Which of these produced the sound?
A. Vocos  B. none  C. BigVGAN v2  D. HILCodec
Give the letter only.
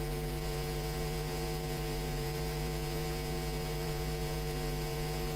A